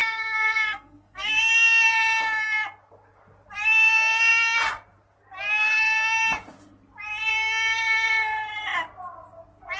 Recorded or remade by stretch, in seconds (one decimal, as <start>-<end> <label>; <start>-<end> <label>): 0.0-1.5 remade; 1.5-9.8 recorded